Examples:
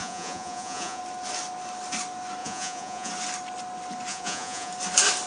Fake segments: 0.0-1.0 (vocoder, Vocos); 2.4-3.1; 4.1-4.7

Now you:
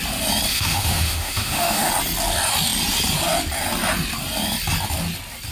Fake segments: 0.5-1.9 (autoencoder, DAC-VAE)

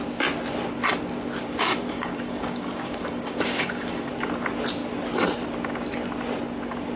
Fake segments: 1.4-4.1 (codec, DAC)

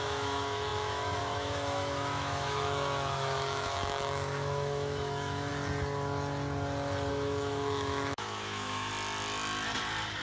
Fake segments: 0.0-5.5 (autoencoder, DAC-VAE); 7.1-8.9

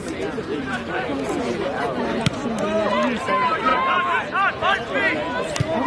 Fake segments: none